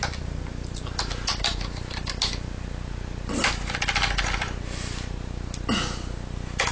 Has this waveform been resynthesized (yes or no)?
no